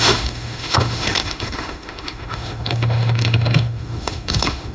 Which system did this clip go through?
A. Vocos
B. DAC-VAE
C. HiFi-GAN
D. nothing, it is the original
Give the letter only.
B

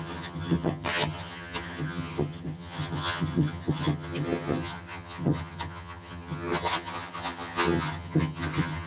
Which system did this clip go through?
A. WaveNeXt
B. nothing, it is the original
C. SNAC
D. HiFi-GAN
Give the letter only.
D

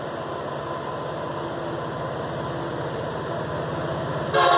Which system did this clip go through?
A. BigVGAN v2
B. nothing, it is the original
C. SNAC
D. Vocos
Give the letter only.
B